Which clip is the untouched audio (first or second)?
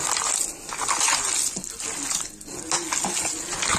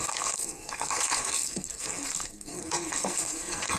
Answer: first